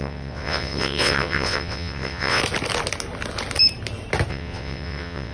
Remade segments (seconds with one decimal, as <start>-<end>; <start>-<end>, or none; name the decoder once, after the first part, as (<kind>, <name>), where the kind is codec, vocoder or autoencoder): 0.0-2.4 (vocoder, WaveNeXt); 4.3-5.3